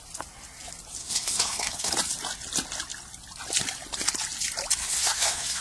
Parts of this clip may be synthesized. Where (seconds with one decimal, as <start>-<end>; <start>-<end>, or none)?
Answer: 1.0-1.9; 4.8-5.6